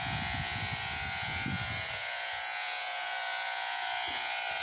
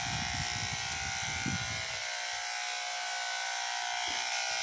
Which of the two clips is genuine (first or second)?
second